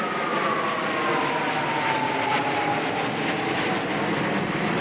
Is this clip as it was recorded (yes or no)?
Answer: yes